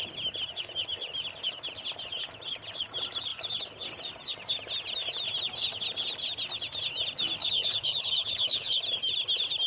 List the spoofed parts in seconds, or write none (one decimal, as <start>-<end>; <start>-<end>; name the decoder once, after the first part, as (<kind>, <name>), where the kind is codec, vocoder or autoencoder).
7.4-8.8 (codec, HILCodec)